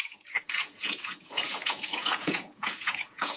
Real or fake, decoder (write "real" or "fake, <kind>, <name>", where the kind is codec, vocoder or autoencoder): fake, vocoder, Vocos